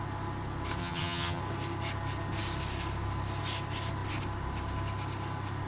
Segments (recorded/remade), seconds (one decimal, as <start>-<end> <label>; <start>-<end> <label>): 0.0-0.8 recorded; 0.8-1.4 remade; 1.4-5.7 recorded